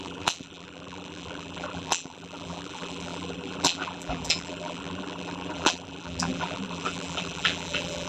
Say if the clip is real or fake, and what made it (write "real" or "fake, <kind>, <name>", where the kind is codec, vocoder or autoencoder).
fake, vocoder, BigVGAN v2